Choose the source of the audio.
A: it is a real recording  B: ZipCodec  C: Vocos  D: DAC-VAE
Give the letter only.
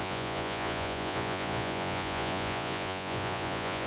C